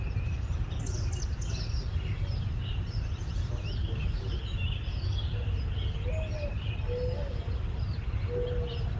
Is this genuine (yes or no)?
yes